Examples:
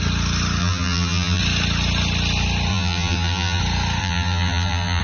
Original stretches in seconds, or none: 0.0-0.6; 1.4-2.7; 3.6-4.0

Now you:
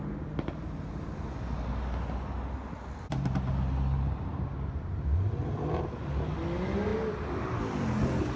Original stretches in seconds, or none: 0.0-4.3; 4.9-8.4

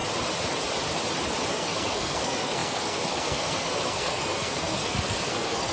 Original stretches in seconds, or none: 0.0-1.5

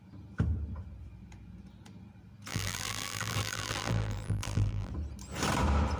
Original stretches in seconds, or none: 0.0-2.5; 4.9-6.0

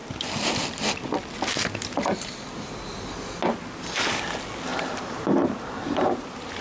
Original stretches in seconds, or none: 0.0-4.7

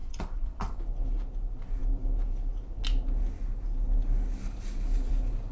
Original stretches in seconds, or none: 0.8-5.5

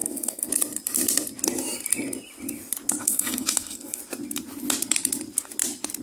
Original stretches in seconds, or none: 0.5-3.0; 4.0-6.0

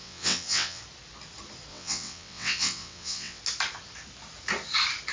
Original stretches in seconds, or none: 0.8-1.7; 3.4-5.1